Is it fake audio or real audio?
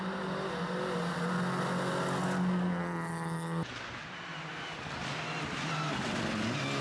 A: real